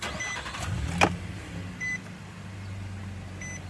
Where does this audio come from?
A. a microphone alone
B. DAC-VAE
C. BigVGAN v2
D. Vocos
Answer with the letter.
A